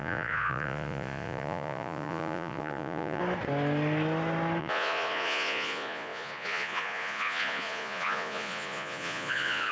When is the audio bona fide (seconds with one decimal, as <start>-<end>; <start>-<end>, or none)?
3.2-4.6